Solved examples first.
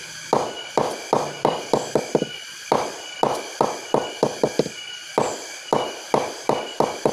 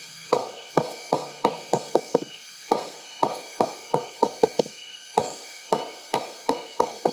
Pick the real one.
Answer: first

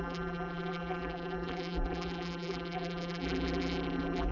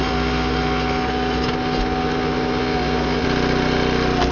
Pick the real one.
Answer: second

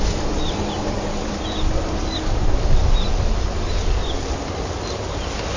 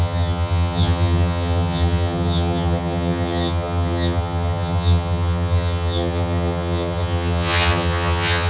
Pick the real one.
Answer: first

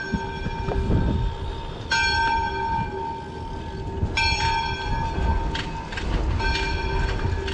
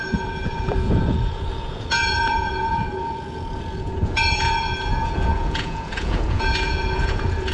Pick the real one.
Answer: first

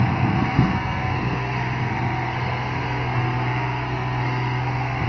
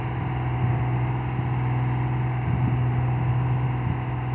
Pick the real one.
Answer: second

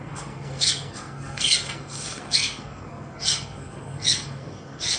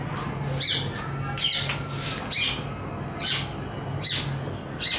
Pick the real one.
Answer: second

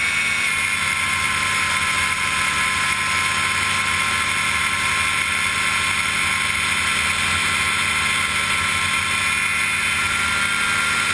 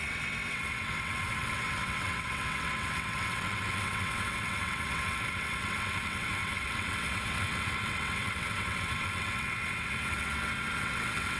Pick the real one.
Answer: first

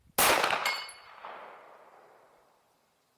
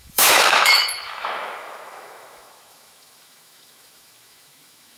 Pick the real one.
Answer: first